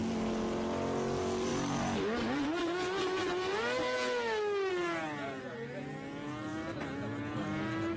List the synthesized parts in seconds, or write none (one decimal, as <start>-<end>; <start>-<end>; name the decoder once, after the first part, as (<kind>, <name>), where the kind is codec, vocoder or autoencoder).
none